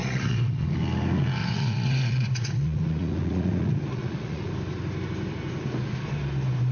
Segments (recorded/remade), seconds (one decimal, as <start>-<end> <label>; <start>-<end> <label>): 0.0-0.7 remade; 0.7-1.4 recorded; 1.4-4.5 remade; 4.5-6.7 recorded